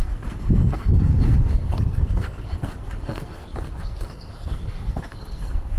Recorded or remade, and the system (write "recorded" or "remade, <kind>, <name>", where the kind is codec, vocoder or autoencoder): remade, codec, SNAC